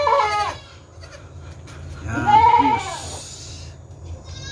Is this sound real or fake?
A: real